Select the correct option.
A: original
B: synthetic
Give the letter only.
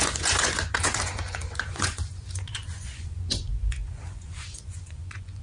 B